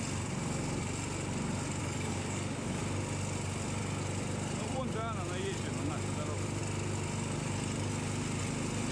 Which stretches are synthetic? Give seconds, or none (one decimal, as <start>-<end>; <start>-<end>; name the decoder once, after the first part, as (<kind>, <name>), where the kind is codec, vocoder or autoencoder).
1.8-2.8 (codec, DAC)